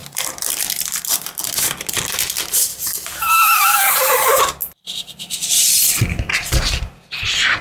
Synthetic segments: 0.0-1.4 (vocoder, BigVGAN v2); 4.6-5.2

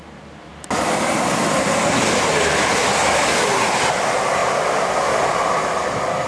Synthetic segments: 3.0-4.0 (vocoder, BigVGAN v2); 4.4-5.5

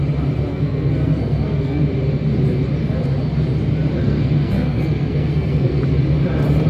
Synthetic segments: 0.5-1.8 (codec, SNAC); 4.0-5.8

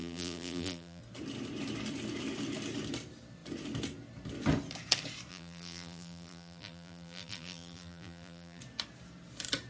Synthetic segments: 0.0-1.0 (vocoder, BigVGAN v2); 5.3-8.6